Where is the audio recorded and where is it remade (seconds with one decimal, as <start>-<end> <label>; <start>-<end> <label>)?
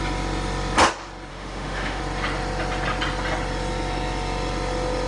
0.0-1.3 recorded; 1.3-2.0 remade; 2.0-5.1 recorded